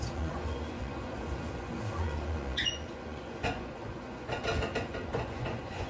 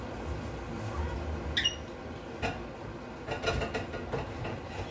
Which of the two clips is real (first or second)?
second